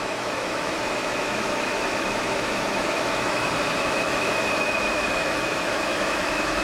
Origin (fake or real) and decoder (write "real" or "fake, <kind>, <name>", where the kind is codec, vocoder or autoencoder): fake, autoencoder, DAC-VAE